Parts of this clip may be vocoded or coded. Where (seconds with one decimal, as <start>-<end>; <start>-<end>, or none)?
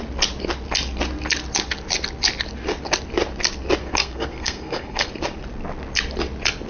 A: 3.8-5.1